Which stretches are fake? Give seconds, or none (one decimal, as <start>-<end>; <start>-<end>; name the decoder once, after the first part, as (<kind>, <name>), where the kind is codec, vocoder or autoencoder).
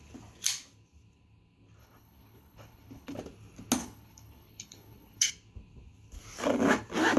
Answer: 1.8-3.2 (codec, HILCodec); 3.8-5.3